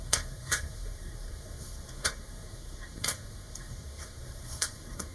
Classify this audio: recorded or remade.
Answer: remade